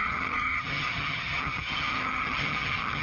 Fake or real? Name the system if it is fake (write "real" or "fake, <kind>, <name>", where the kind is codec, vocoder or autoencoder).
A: fake, vocoder, HiFi-GAN